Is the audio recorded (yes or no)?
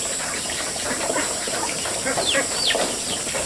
no